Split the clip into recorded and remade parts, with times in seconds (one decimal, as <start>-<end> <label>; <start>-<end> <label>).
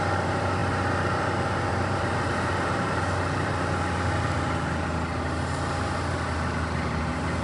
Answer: 0.0-0.6 remade; 0.6-1.7 recorded; 1.7-3.5 remade; 3.5-6.6 recorded; 6.6-7.4 remade